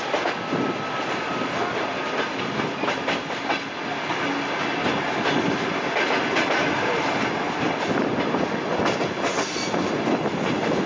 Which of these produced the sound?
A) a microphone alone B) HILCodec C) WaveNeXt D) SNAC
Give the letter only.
A